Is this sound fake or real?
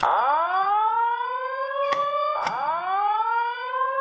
fake